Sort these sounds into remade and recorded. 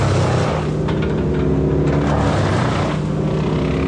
recorded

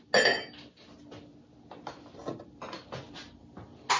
recorded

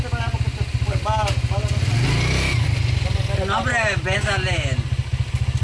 recorded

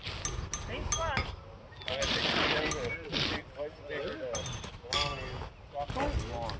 recorded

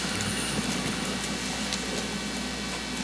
recorded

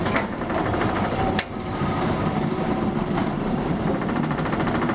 remade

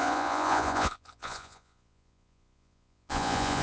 remade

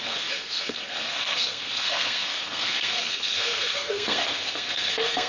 remade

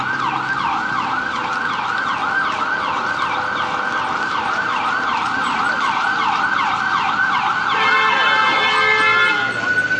recorded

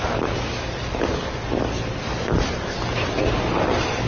recorded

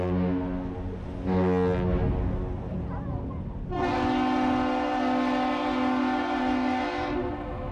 recorded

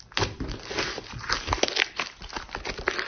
recorded